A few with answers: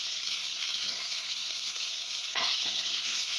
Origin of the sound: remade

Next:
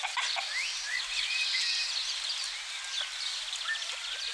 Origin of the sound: recorded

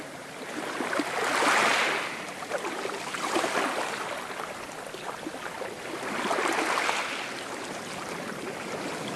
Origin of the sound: recorded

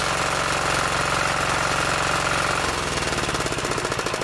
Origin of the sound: recorded